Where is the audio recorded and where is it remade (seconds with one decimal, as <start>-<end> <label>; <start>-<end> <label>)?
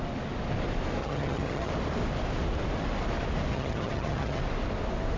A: 0.0-1.0 recorded; 1.0-1.7 remade; 1.7-3.5 recorded; 3.5-4.4 remade; 4.4-5.2 recorded